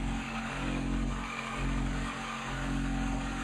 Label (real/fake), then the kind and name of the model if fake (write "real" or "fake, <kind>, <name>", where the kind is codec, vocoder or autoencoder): fake, codec, DAC